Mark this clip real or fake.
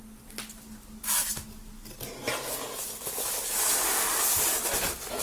real